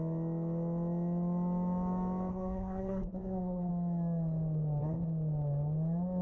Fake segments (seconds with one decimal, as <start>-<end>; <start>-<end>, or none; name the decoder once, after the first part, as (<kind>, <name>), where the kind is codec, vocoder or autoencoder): 2.3-3.7 (codec, SNAC)